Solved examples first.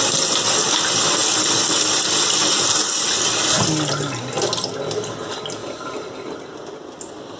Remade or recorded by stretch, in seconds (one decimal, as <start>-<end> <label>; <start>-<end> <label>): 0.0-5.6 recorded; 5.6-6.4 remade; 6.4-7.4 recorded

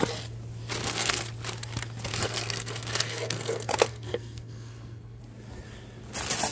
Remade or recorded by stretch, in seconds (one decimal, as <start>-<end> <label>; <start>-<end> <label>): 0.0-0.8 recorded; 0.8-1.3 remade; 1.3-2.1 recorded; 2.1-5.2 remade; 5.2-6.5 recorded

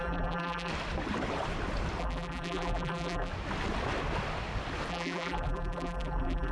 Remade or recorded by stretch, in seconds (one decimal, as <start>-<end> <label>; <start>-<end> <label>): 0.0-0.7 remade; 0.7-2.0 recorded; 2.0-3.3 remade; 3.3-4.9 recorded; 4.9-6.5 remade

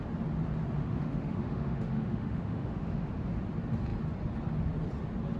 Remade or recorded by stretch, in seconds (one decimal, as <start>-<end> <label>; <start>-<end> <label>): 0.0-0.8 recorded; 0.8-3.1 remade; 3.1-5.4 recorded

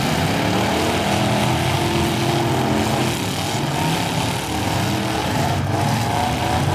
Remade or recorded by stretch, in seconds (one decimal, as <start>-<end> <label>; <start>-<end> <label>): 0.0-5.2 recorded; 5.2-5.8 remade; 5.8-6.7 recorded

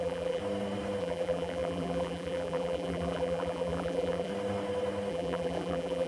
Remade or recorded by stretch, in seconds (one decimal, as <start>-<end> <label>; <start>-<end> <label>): 0.0-0.4 remade; 0.4-1.0 recorded; 1.0-4.3 remade; 4.3-5.1 recorded; 5.1-6.1 remade

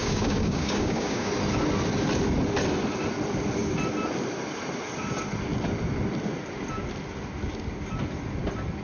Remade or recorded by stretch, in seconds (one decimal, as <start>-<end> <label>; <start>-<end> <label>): 0.0-1.3 remade; 1.3-8.8 recorded

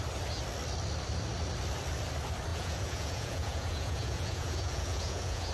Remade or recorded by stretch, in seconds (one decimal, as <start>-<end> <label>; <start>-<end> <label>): 0.0-2.5 recorded; 2.5-5.5 remade